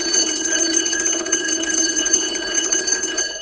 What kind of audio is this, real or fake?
fake